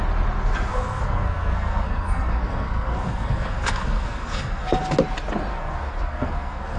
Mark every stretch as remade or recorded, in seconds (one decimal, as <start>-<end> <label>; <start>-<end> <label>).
0.0-0.7 recorded; 0.7-4.8 remade; 4.8-5.5 recorded; 5.5-6.8 remade